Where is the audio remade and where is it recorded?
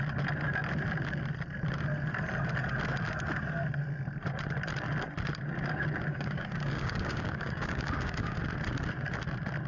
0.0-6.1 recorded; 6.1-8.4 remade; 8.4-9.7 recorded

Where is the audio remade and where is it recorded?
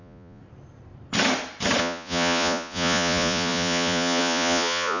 0.0-0.4 remade; 0.4-1.8 recorded; 1.8-5.0 remade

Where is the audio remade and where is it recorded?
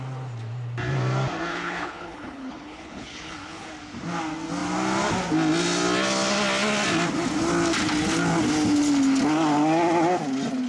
0.0-1.5 recorded; 1.5-3.7 remade; 3.7-10.7 recorded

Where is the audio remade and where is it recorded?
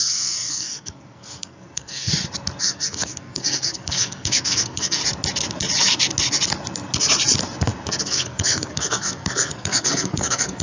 0.0-2.1 remade; 2.1-2.6 recorded; 2.6-5.0 remade; 5.0-8.0 recorded; 8.0-10.6 remade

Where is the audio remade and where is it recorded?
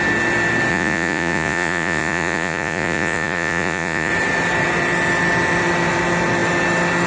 0.0-0.7 recorded; 0.7-4.1 remade; 4.1-7.1 recorded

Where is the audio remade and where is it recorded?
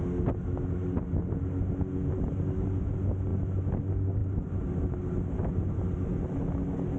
0.0-7.0 recorded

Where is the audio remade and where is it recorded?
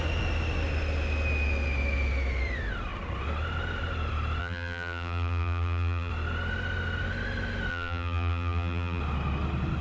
0.0-4.4 recorded; 4.4-6.1 remade; 6.1-7.7 recorded; 7.7-9.0 remade; 9.0-9.8 recorded